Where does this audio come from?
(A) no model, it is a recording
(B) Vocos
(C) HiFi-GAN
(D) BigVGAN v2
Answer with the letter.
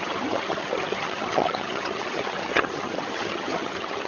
C